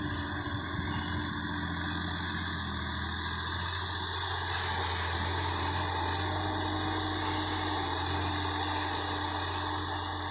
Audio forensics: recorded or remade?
recorded